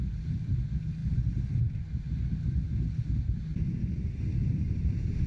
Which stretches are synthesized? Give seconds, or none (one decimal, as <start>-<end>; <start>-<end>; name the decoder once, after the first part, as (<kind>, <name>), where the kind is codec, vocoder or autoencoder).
4.4-5.3 (vocoder, BigVGAN v2)